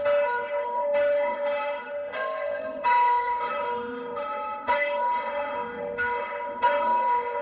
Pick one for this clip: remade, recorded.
remade